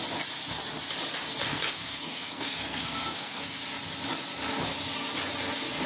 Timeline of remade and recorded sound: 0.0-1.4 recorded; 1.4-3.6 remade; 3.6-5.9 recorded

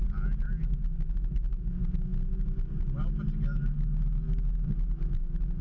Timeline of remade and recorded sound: 0.0-5.6 recorded

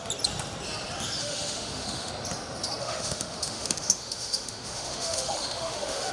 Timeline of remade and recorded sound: 0.0-1.2 recorded; 1.2-2.1 remade; 2.1-2.8 recorded; 2.8-6.1 remade

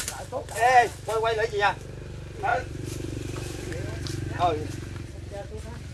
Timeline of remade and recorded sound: 0.0-5.9 recorded

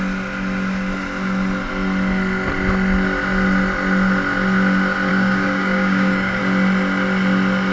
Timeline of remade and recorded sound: 0.0-5.1 recorded; 5.1-6.4 remade; 6.4-7.7 recorded